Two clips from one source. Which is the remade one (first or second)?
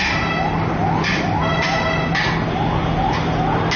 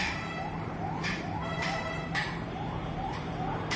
second